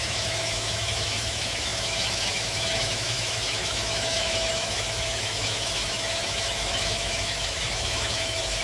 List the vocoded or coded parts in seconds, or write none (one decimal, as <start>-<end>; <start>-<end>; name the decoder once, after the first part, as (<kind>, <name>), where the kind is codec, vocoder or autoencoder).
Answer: 0.0-8.6 (autoencoder, DAC-VAE)